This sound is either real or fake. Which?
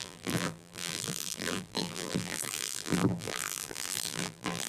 fake